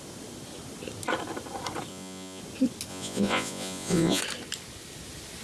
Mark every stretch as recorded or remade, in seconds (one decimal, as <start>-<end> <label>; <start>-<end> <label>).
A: 0.0-1.9 recorded; 1.9-2.4 remade; 2.4-2.9 recorded; 2.9-4.2 remade; 4.2-5.4 recorded